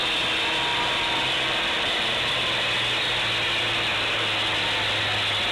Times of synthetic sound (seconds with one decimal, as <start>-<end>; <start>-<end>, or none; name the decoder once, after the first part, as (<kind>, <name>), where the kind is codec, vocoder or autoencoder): 0.7-2.5 (vocoder, BigVGAN v2)